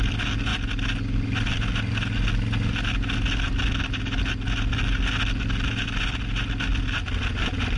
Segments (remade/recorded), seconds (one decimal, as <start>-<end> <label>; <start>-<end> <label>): 0.0-7.8 recorded